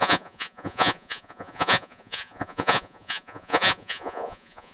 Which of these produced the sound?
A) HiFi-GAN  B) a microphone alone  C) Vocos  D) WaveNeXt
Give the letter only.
C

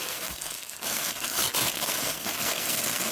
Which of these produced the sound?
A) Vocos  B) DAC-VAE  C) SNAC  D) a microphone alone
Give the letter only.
C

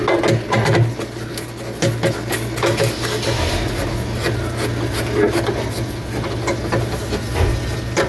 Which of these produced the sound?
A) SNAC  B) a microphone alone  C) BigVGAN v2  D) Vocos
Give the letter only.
B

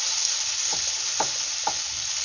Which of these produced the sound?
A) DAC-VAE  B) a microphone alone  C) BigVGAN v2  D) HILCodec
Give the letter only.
B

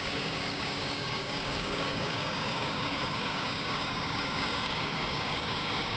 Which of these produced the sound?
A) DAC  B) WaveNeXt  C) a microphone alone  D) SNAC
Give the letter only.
A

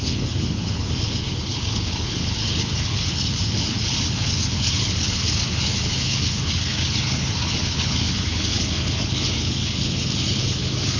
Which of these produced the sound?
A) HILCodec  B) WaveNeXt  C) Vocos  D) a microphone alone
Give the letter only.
A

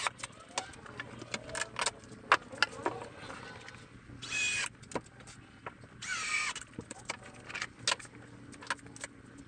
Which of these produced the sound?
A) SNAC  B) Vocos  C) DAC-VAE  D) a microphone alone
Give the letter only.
D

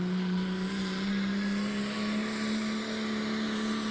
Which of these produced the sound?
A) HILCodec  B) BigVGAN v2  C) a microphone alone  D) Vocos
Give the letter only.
C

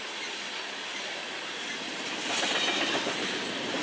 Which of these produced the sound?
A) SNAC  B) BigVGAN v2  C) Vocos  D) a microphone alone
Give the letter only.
D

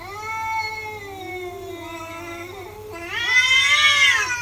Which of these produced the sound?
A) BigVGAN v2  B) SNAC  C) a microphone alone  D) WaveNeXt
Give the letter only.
C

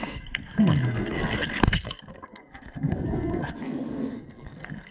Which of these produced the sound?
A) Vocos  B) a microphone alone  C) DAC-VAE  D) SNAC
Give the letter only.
D